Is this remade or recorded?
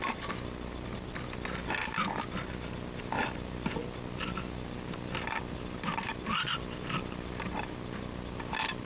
recorded